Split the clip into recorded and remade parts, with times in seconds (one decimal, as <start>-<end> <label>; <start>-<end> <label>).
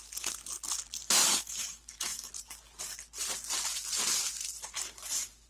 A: 0.0-1.2 recorded; 1.2-2.3 remade; 2.3-5.5 recorded